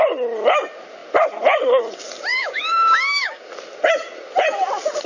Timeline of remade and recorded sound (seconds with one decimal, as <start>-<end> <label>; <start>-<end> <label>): 0.0-2.3 recorded; 2.3-3.5 remade; 3.5-5.1 recorded